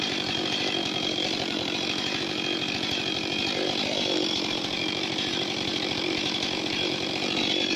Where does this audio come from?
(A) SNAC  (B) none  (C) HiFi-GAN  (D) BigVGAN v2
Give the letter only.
D